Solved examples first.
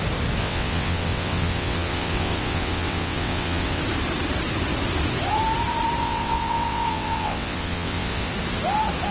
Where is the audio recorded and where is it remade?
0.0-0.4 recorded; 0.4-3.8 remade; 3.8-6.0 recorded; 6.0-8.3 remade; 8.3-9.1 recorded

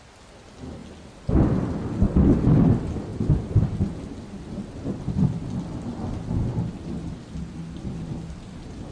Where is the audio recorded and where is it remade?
0.0-8.9 recorded

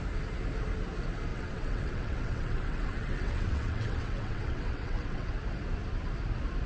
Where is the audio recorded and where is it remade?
0.0-1.3 recorded; 1.3-5.3 remade; 5.3-6.7 recorded

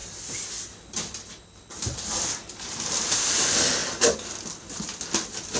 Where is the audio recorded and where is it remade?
0.0-5.6 recorded

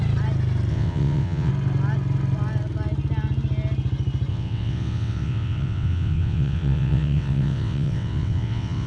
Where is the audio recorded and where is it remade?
0.0-0.7 recorded; 0.7-1.5 remade; 1.5-4.3 recorded; 4.3-8.9 remade

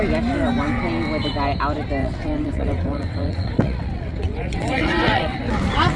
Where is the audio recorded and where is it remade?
0.0-2.0 recorded; 2.0-5.6 remade; 5.6-6.0 recorded

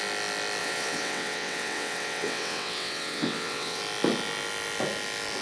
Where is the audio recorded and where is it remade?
0.0-0.6 recorded; 0.6-3.8 remade; 3.8-5.4 recorded

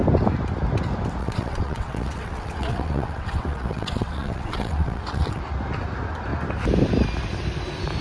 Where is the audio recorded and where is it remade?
0.0-1.2 recorded; 1.2-5.4 remade; 5.4-8.0 recorded